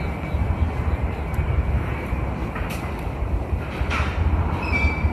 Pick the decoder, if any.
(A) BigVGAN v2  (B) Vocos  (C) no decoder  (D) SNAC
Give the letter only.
A